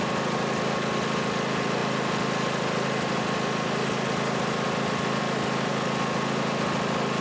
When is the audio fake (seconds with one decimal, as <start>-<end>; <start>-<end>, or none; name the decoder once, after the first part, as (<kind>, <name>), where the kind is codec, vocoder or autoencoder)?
none